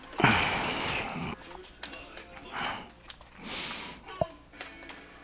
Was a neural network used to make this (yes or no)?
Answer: no